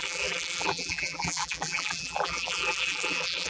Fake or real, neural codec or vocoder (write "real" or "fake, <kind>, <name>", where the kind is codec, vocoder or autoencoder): fake, vocoder, BigVGAN v2